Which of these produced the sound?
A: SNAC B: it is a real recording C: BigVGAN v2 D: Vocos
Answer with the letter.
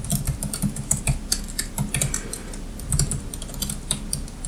B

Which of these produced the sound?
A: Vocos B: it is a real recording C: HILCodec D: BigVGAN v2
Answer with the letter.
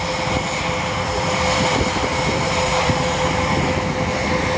D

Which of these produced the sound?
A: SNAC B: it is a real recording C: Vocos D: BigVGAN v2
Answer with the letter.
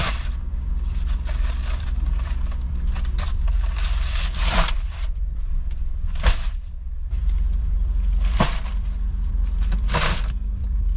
D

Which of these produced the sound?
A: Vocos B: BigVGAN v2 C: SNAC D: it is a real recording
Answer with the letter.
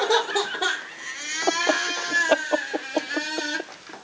D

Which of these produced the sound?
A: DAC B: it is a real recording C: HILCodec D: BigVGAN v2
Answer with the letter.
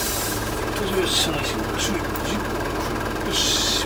B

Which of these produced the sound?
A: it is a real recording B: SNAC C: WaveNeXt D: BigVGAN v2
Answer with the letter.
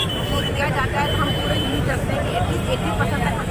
D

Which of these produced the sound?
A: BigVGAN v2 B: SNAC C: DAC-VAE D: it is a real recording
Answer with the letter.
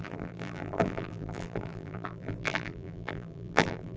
A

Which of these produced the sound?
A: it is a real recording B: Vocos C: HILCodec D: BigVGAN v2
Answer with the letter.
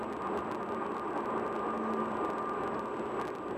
A